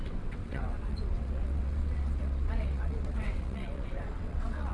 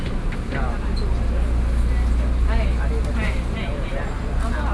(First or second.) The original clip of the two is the second